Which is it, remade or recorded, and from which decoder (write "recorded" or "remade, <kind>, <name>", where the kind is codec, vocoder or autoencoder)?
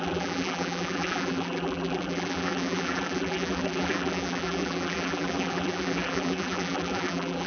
remade, vocoder, BigVGAN v2